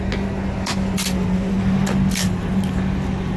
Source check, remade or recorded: recorded